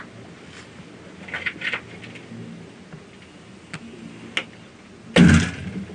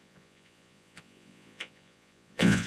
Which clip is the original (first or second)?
first